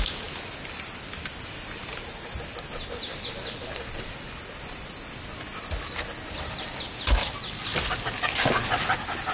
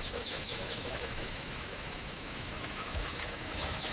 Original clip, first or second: first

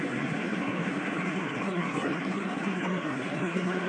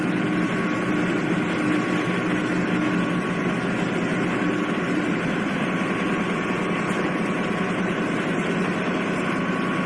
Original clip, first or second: second